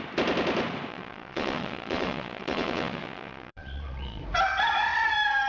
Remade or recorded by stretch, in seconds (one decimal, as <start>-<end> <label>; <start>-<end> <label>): 0.0-0.9 recorded; 0.9-4.2 remade; 4.2-5.5 recorded